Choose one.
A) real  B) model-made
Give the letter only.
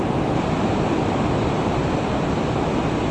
A